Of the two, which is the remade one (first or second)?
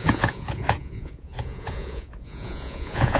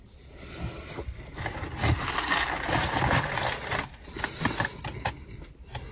first